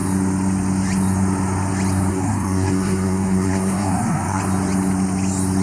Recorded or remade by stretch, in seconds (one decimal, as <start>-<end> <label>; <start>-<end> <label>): 0.0-2.1 recorded; 2.1-4.4 remade; 4.4-5.6 recorded